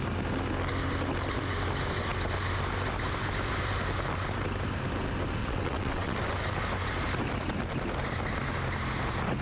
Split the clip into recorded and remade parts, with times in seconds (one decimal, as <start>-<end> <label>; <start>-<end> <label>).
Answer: 0.0-5.4 recorded; 5.4-6.2 remade; 6.2-9.4 recorded